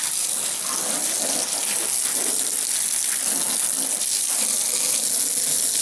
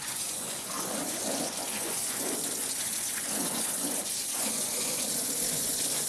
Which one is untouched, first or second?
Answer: first